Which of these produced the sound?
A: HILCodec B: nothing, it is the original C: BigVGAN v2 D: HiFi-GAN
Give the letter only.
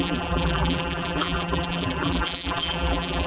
C